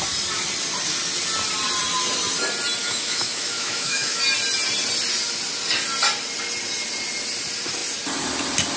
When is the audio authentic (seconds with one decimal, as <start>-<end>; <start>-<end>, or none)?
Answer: 0.0-2.8; 4.2-8.8